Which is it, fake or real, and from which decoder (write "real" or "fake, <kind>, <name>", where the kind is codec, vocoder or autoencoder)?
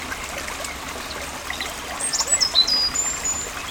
real